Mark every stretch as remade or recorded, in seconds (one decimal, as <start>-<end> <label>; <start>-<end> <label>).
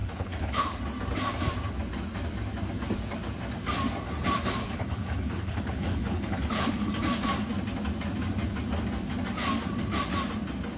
0.0-0.8 remade; 0.8-4.6 recorded; 4.6-6.9 remade; 6.9-10.8 recorded